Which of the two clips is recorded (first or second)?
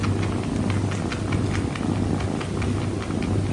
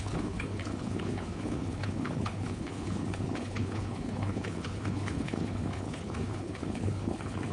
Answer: first